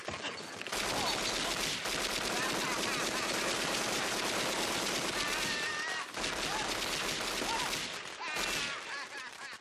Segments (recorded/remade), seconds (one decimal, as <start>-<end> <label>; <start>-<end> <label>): 0.0-9.6 recorded